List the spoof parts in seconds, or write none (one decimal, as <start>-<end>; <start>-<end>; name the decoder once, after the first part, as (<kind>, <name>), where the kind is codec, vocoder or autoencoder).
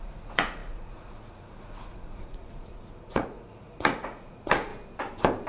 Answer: 0.0-4.7 (vocoder, Vocos)